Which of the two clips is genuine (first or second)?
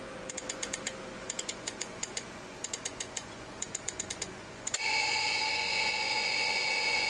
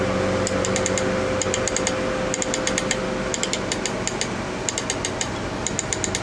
second